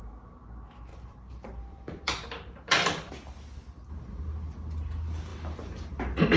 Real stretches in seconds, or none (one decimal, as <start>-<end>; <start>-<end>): 0.0-0.9; 3.1-5.3; 6.0-6.4